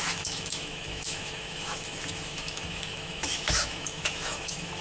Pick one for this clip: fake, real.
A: fake